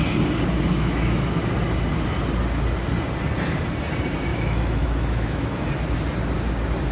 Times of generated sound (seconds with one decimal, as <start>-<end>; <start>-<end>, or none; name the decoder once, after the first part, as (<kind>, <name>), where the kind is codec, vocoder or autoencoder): 0.7-1.4 (autoencoder, DAC-VAE); 4.3-5.7